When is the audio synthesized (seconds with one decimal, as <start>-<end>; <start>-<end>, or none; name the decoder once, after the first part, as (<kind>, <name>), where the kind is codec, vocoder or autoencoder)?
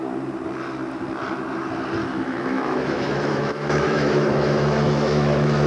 2.0-5.7 (autoencoder, DAC-VAE)